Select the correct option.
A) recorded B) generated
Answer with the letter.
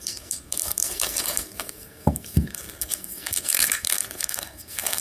B